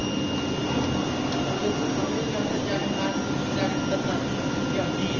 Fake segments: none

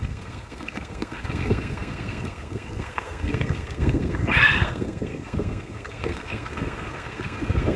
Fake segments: 0.0-7.8

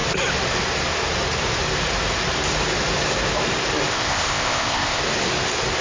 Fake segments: 3.9-5.0

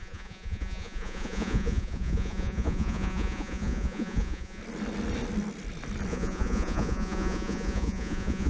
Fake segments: 0.0-4.6; 6.1-8.5

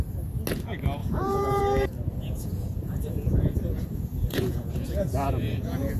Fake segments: 1.0-1.6; 2.1-6.0

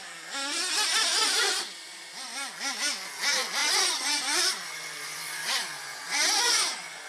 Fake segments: 1.1-1.6; 3.6-7.1

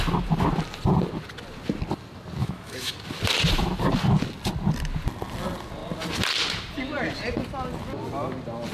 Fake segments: 2.4-2.9

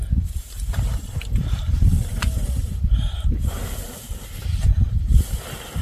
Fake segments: 0.0-3.6; 4.4-5.8